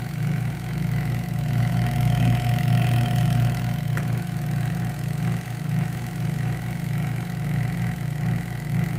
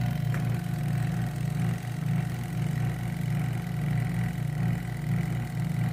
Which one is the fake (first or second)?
first